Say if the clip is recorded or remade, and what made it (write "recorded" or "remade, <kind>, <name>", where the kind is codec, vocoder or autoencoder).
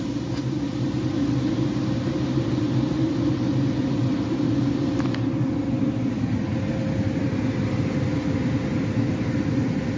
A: recorded